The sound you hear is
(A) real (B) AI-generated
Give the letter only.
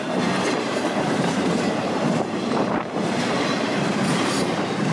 B